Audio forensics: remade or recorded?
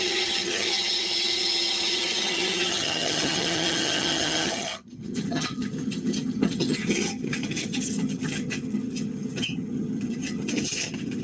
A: remade